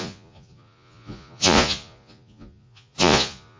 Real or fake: fake